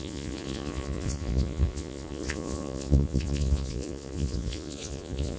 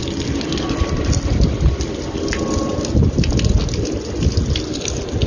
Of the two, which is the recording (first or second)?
second